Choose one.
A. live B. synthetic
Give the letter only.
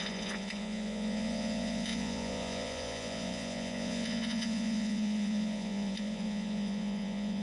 B